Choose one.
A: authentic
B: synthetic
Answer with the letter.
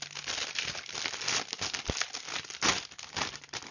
A